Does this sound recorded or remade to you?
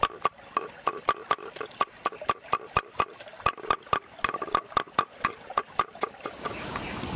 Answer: recorded